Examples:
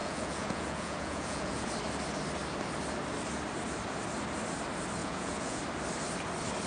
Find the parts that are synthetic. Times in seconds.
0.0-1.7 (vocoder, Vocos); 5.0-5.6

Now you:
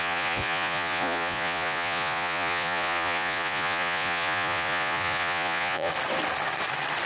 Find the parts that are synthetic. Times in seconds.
0.0-5.9 (vocoder, Vocos)